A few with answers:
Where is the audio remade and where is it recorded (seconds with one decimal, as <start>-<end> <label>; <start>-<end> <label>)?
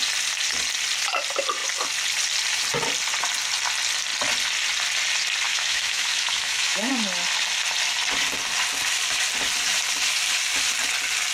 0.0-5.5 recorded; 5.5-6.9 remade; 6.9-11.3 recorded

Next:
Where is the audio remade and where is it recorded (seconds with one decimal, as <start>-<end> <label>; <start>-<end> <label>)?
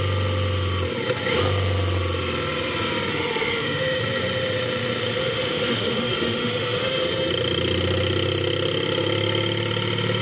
0.0-3.1 recorded; 3.1-4.0 remade; 4.0-5.2 recorded; 5.2-7.3 remade; 7.3-10.2 recorded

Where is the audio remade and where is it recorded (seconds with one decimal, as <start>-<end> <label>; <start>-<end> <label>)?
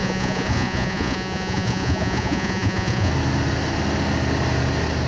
0.0-3.1 remade; 3.1-5.1 recorded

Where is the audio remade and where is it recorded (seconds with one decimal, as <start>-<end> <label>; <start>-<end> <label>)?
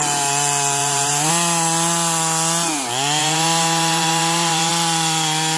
0.0-0.8 recorded; 0.8-1.3 remade; 1.3-3.2 recorded; 3.2-4.7 remade; 4.7-5.6 recorded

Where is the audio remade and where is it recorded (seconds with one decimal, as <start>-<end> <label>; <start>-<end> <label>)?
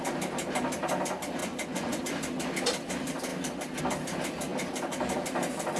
0.0-1.4 recorded; 1.4-2.0 remade; 2.0-5.8 recorded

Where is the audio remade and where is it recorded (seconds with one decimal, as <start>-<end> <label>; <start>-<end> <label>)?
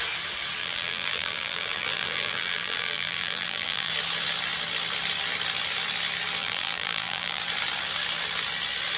0.0-0.6 recorded; 0.6-3.9 remade; 3.9-6.4 recorded; 6.4-7.4 remade; 7.4-9.0 recorded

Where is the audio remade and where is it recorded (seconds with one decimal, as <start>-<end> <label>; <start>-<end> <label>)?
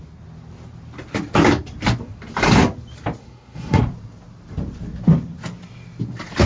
0.0-3.2 recorded; 3.2-3.8 remade; 3.8-6.5 recorded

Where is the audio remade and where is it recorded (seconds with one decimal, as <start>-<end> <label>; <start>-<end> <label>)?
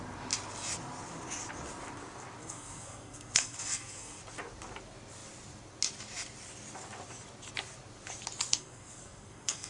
0.0-2.4 recorded; 2.4-4.2 remade; 4.2-8.5 recorded; 8.5-9.7 remade